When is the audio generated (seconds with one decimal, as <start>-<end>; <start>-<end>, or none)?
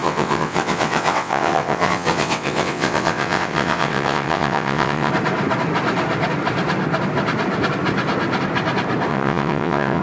0.0-5.1; 9.1-10.0